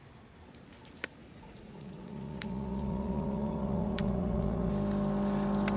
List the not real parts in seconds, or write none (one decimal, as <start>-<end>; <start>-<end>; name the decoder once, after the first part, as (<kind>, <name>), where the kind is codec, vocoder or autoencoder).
1.2-4.7 (vocoder, Vocos)